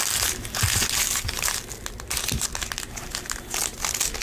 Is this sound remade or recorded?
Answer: recorded